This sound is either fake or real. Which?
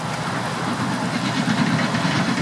real